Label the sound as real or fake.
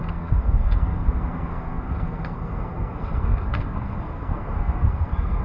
fake